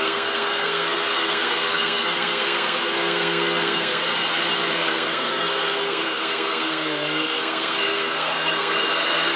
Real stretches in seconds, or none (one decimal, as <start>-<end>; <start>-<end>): 4.1-4.7